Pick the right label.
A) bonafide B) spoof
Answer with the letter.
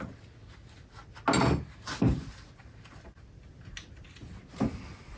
A